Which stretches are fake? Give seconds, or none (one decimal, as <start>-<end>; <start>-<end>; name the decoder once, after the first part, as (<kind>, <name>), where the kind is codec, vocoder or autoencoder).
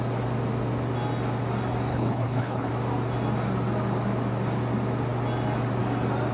1.9-2.7 (codec, HILCodec)